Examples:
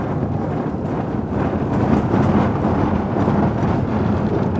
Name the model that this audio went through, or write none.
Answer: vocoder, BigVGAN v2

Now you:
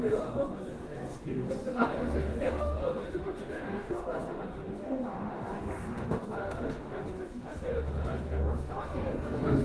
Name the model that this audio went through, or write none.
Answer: autoencoder, DAC-VAE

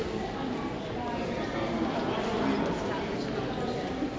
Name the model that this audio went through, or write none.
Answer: none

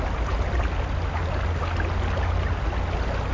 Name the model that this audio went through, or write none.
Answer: none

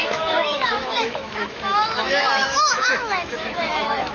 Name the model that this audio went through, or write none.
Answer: autoencoder, DAC-VAE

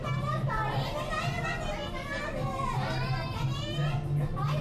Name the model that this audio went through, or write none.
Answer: none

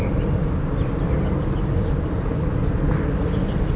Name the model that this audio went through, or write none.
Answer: none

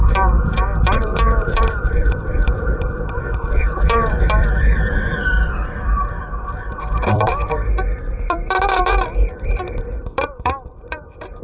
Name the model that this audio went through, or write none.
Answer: vocoder, BigVGAN v2